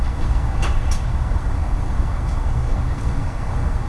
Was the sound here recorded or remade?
remade